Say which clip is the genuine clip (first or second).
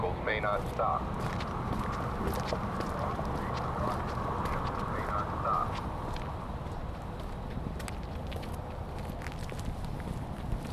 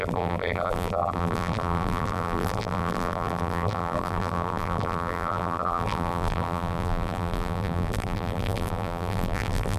first